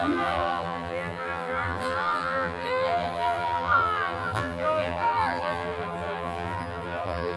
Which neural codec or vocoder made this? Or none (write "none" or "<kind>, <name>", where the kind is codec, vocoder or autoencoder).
vocoder, BigVGAN v2